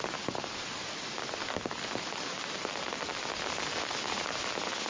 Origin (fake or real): real